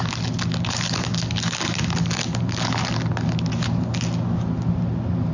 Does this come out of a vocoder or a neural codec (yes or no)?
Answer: no